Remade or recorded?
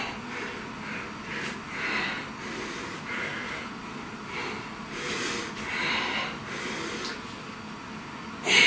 recorded